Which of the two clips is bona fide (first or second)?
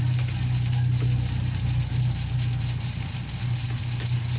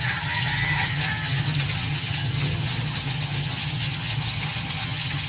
first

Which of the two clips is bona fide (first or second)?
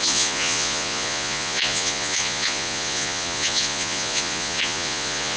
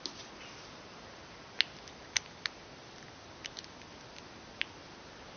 second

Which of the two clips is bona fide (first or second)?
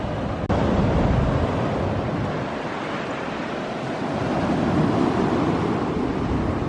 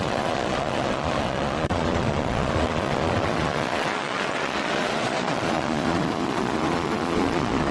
first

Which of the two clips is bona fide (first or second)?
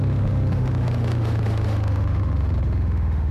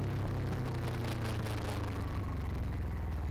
second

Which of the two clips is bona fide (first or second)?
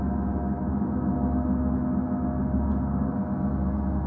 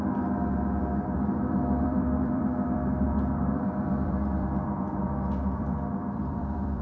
first